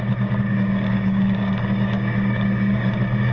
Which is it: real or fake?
fake